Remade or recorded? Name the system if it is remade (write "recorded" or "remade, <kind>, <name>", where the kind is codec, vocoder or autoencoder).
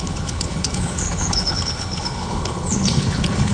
remade, codec, HILCodec